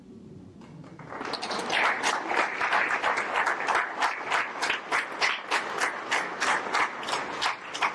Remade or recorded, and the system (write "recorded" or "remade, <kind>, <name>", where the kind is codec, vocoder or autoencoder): recorded